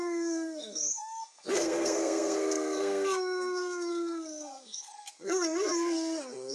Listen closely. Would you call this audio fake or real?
fake